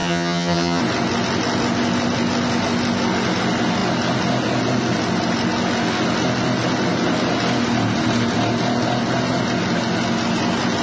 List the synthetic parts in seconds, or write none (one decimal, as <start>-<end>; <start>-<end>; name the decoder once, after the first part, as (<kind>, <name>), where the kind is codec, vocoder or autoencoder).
0.0-0.8 (vocoder, HiFi-GAN)

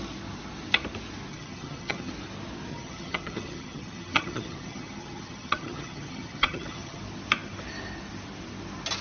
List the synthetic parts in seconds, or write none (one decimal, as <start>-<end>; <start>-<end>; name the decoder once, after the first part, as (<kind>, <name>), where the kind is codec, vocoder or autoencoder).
1.3-2.1 (vocoder, HiFi-GAN); 2.7-7.0

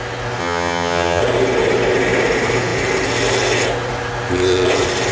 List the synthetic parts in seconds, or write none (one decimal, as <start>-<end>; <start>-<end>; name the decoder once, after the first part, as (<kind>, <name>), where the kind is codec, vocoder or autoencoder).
0.4-1.2 (vocoder, HiFi-GAN)

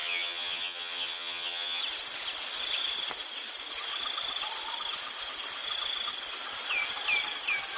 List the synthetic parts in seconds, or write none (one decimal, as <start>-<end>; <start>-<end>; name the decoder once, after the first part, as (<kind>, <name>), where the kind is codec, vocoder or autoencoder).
0.0-1.8 (vocoder, HiFi-GAN)

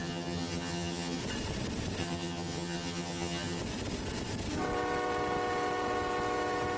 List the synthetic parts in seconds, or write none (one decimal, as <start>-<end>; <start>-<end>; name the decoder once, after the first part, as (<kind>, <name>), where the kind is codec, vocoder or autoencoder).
0.0-1.2 (vocoder, HiFi-GAN); 2.0-3.6